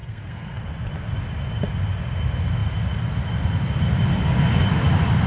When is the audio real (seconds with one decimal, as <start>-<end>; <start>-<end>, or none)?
0.6-5.3